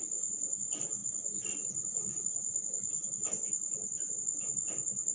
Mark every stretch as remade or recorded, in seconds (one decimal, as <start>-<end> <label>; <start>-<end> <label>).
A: 0.0-5.1 recorded